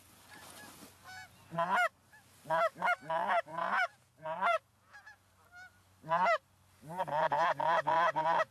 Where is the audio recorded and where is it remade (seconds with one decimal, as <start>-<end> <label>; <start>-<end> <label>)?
0.0-3.5 recorded; 3.5-5.3 remade; 5.3-8.5 recorded